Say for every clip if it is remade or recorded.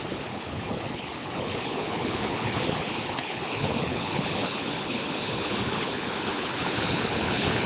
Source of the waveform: remade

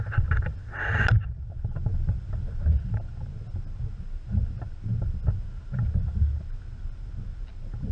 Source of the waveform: recorded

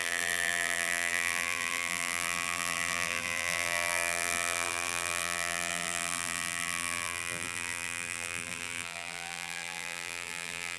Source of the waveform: remade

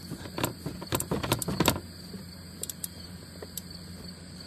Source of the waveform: recorded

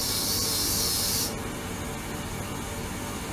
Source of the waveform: recorded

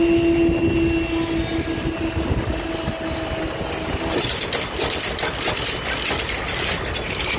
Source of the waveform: recorded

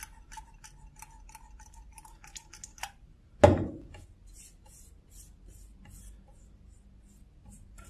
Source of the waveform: recorded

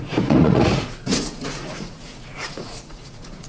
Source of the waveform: remade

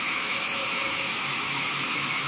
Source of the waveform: remade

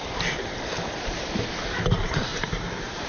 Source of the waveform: remade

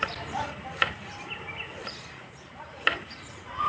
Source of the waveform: remade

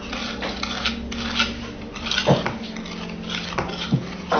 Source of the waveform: recorded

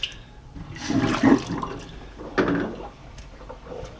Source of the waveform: recorded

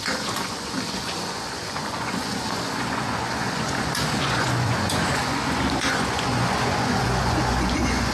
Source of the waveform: remade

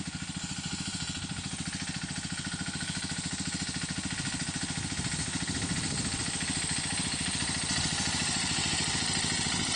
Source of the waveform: recorded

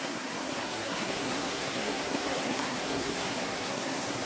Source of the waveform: remade